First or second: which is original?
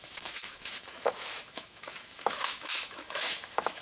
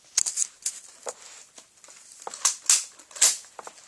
second